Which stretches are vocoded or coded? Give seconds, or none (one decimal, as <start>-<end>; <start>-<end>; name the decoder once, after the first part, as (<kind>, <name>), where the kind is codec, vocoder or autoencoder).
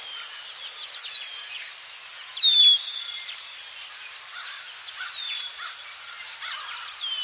none